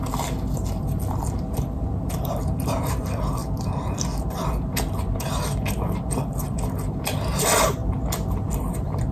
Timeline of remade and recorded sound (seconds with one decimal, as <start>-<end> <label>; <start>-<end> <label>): 0.0-3.4 remade; 3.4-6.1 recorded; 6.1-7.8 remade; 7.8-8.4 recorded; 8.4-9.1 remade